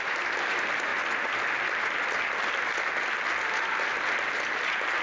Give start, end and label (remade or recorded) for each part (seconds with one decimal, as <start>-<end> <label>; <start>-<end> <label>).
0.0-5.0 recorded